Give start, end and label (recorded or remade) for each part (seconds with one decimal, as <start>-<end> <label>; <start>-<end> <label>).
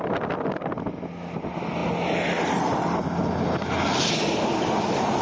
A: 0.0-5.2 recorded